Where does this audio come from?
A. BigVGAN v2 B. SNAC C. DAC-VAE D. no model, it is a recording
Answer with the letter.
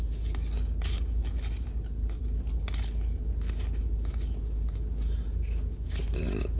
D